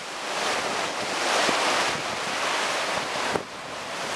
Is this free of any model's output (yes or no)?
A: yes